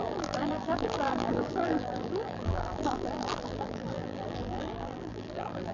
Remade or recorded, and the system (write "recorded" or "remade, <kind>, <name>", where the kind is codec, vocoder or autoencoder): remade, vocoder, BigVGAN v2